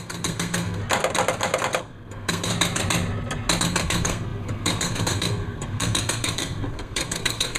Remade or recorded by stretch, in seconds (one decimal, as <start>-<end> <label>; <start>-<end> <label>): 0.0-0.8 remade; 0.8-1.8 recorded; 1.8-2.5 remade; 2.5-3.6 recorded; 3.6-7.6 remade